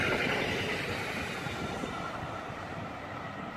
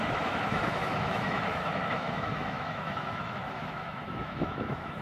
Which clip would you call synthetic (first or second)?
second